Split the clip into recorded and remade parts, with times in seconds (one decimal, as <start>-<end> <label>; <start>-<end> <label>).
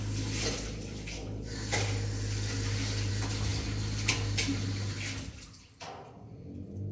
0.0-6.9 recorded